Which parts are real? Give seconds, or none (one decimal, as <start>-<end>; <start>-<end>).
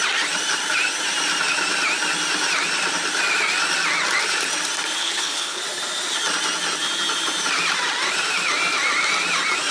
0.0-5.0; 5.6-9.7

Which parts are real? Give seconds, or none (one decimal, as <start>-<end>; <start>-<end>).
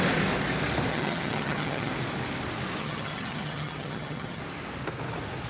0.0-0.9; 1.9-2.8; 4.4-5.5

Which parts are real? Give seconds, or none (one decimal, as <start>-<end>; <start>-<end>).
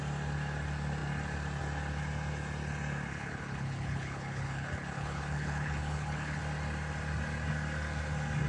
0.0-3.1; 6.4-8.5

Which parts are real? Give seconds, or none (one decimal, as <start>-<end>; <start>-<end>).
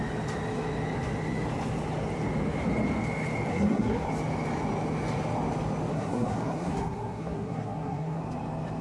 0.0-3.5; 4.1-5.9; 8.2-8.8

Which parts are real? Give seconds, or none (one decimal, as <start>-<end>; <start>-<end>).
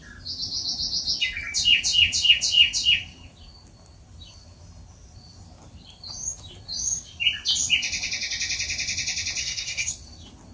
0.0-9.4; 9.9-10.5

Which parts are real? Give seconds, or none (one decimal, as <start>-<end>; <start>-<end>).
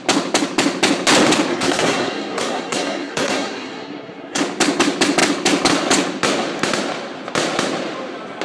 0.0-1.5; 4.4-8.4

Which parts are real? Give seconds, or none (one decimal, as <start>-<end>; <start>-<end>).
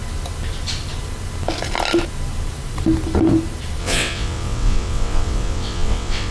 0.0-3.8